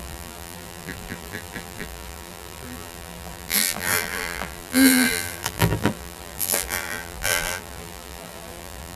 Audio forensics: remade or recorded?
remade